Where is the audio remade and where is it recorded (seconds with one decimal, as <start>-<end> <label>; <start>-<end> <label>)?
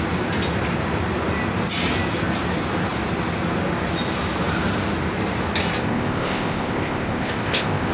0.0-5.8 recorded; 5.8-7.9 remade